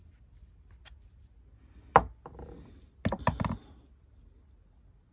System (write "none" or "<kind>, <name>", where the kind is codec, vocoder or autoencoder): none